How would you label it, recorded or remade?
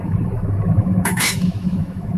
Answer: remade